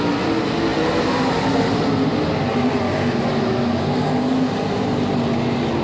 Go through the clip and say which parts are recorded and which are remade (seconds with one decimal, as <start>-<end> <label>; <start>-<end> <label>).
0.0-5.8 recorded

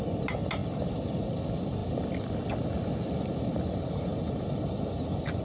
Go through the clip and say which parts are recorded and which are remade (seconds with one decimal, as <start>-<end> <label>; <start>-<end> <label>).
0.0-5.4 recorded

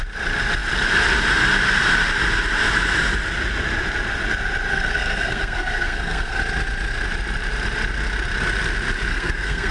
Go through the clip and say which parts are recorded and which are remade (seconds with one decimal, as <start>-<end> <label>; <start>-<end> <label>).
0.0-4.7 recorded; 4.7-6.4 remade; 6.4-9.1 recorded; 9.1-9.7 remade

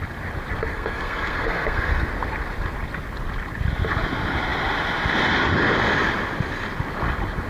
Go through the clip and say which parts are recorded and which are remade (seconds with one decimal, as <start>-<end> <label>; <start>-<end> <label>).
0.0-0.7 recorded; 0.7-2.1 remade; 2.1-7.5 recorded

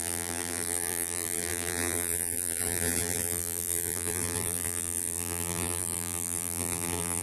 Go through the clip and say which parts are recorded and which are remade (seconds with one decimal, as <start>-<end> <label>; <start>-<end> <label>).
0.0-7.2 remade